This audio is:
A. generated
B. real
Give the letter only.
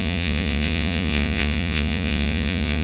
A